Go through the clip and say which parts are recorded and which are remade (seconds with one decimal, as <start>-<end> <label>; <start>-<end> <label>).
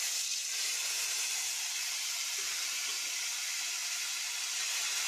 0.0-0.8 recorded; 0.8-2.6 remade; 2.6-3.8 recorded; 3.8-4.6 remade; 4.6-5.1 recorded